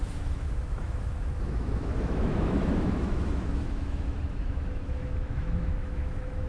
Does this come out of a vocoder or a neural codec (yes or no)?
yes